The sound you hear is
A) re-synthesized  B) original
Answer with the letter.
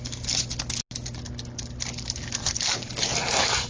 B